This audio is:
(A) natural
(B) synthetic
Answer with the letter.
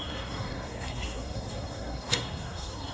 B